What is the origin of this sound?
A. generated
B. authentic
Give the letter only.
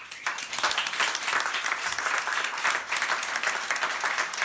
B